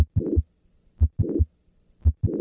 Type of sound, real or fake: real